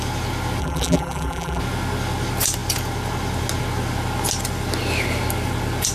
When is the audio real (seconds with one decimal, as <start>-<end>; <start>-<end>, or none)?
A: 0.0-0.6; 1.6-5.9